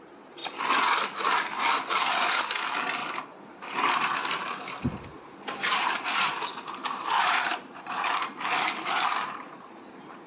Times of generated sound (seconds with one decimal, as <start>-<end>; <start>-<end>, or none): 0.0-0.4; 1.7-3.0; 3.9-10.3